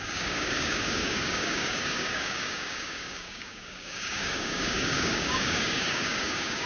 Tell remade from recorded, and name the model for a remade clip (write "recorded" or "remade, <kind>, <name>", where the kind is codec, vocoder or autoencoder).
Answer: remade, codec, DAC